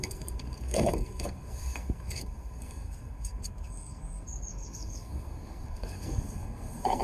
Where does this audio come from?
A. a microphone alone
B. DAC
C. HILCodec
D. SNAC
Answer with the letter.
D